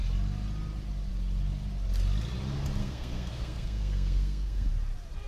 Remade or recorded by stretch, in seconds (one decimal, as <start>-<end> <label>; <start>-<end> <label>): 0.0-2.8 recorded; 2.8-4.7 remade; 4.7-5.3 recorded